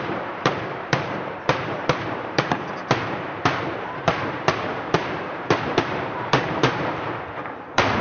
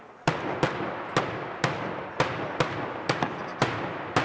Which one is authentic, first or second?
second